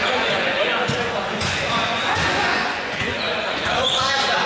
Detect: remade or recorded remade